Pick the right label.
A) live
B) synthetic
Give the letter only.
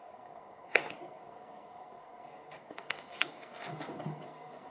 B